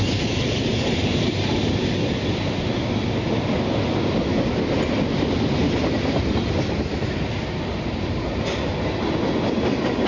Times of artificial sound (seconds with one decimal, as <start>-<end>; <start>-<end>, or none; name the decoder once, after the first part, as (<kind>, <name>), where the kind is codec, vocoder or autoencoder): 0.7-1.6 (vocoder, BigVGAN v2)

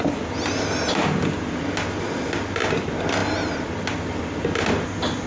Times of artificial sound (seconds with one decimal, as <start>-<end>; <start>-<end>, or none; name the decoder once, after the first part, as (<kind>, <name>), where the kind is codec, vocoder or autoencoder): none

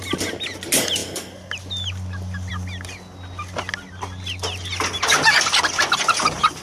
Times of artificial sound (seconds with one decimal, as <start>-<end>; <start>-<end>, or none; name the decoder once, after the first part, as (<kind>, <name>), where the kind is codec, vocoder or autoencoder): none

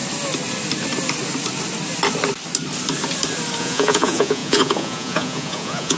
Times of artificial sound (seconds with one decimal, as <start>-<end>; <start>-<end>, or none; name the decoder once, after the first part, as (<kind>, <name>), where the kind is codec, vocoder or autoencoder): 3.6-6.0 (vocoder, Vocos)

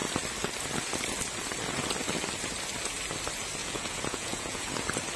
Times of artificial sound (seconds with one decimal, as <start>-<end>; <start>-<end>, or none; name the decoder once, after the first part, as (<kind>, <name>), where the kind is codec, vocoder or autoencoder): 3.6-4.7 (vocoder, Vocos)

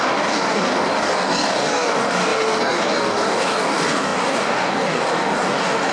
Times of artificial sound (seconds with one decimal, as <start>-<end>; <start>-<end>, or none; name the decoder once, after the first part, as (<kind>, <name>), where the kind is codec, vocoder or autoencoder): 0.0-5.9 (codec, DAC)

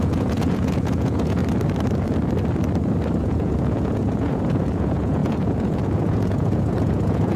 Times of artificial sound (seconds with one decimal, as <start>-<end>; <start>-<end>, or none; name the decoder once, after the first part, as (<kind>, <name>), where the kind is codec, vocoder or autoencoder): 0.0-1.4 (vocoder, Vocos); 3.2-7.4

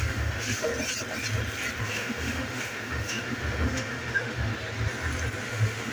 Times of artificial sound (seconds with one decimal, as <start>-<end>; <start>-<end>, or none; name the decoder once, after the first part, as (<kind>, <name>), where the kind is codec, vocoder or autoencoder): 0.0-0.7 (autoencoder, DAC-VAE); 1.8-4.5; 5.4-5.9